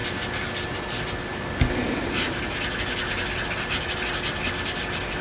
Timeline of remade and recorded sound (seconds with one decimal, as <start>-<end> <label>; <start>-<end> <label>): 0.0-5.2 recorded